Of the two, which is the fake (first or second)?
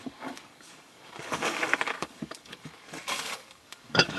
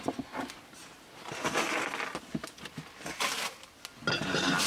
first